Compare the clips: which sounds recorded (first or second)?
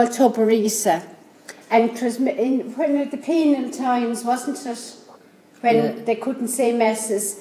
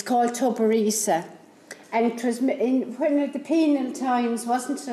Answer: second